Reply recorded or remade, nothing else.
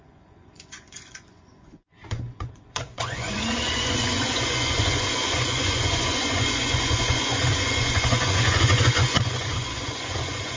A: remade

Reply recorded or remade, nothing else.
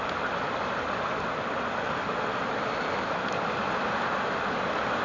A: recorded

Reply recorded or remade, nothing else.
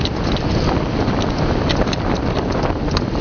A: recorded